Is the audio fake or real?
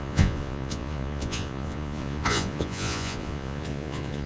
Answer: fake